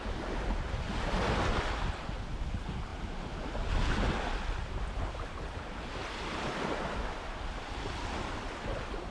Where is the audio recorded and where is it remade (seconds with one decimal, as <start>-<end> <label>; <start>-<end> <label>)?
0.0-9.1 recorded